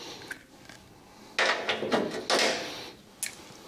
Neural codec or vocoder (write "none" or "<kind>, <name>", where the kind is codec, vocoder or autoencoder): none